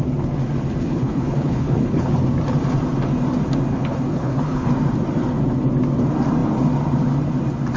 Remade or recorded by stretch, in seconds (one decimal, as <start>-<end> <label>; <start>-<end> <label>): 0.0-0.8 recorded; 0.8-2.1 remade; 2.1-3.7 recorded; 3.7-4.7 remade; 4.7-7.8 recorded